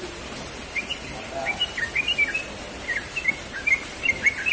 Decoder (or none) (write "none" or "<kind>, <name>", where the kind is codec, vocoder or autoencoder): none